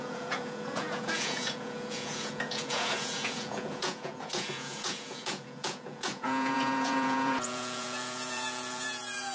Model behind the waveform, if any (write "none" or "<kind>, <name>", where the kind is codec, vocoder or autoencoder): vocoder, Vocos